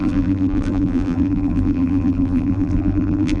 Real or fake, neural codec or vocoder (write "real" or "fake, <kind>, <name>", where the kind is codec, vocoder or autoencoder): fake, vocoder, BigVGAN v2